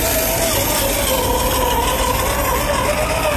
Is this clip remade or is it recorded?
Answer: recorded